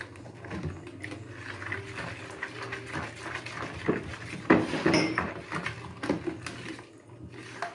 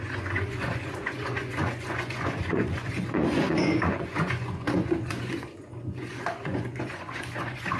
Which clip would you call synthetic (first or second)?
second